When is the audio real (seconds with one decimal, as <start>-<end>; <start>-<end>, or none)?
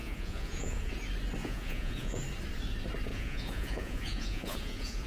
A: 0.9-1.4; 2.2-3.1